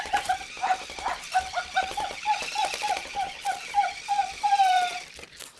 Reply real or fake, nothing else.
fake